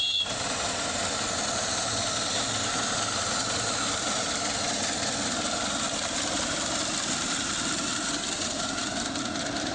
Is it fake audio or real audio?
real